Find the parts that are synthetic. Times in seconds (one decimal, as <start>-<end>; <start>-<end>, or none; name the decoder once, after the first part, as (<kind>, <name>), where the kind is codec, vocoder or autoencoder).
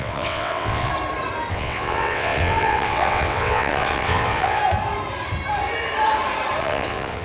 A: 0.0-0.9 (vocoder, WaveNeXt); 1.5-4.6; 6.6-7.2